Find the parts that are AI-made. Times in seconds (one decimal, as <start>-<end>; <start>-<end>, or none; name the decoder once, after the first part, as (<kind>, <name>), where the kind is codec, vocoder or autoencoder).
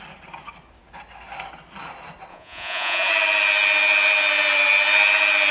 2.3-3.1 (vocoder, Vocos)